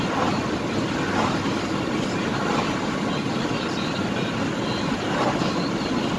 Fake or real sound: real